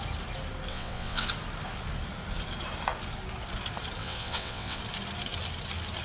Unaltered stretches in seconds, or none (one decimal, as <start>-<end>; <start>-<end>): 0.0-0.7; 1.3-4.0; 4.8-6.0